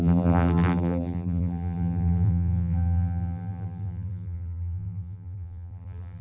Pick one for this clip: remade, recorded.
remade